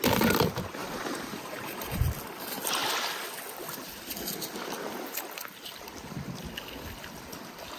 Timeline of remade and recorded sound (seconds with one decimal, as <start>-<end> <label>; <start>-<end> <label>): 0.0-0.8 recorded; 0.8-2.0 remade; 2.0-7.8 recorded